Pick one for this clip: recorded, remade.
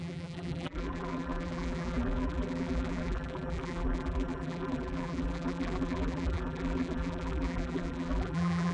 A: remade